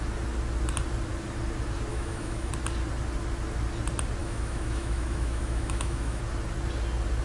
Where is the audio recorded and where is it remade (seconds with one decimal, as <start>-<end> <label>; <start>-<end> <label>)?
0.0-1.9 recorded; 1.9-2.5 remade; 2.5-4.2 recorded; 4.2-6.2 remade; 6.2-7.2 recorded